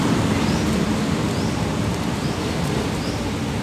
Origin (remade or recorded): recorded